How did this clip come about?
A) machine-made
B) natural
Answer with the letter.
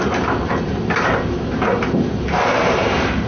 B